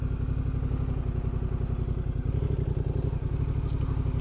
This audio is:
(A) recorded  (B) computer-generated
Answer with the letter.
A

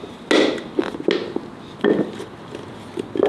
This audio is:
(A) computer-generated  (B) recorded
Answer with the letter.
B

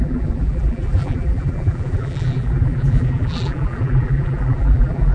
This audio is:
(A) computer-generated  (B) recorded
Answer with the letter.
A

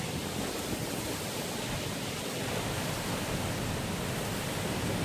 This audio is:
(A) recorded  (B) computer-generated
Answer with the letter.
A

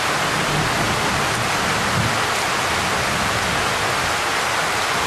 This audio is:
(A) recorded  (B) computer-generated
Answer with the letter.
A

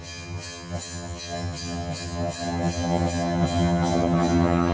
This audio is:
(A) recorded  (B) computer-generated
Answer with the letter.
B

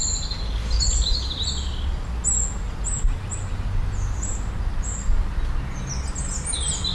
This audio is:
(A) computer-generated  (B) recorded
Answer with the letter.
B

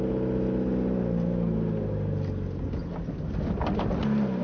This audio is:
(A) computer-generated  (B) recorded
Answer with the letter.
B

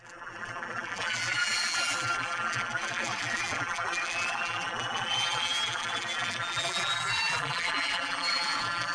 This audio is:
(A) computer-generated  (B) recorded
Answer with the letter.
A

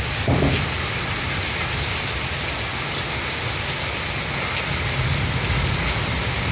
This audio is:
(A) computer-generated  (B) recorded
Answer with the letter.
B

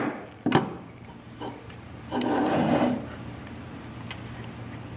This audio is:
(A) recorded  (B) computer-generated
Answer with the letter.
A